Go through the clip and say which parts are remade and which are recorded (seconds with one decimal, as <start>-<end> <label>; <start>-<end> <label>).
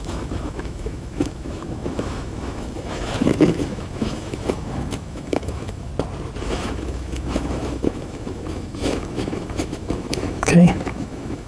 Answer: 0.0-5.9 remade; 5.9-6.4 recorded; 6.4-11.5 remade